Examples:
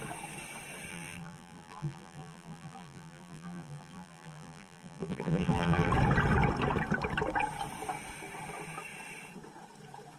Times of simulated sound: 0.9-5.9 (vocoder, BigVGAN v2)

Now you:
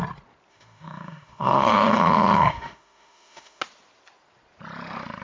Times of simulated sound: 0.5-3.6 (autoencoder, DAC-VAE)

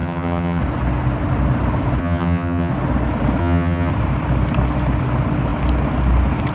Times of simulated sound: 0.0-0.6 (vocoder, HiFi-GAN); 2.0-2.7; 3.4-3.9

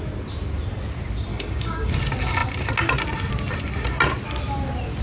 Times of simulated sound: 1.3-1.9 (codec, DAC)

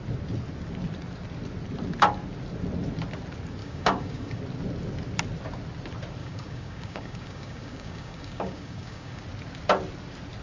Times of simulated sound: 3.6-4.4 (codec, DAC); 6.2-9.2